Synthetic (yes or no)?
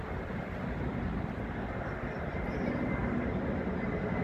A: no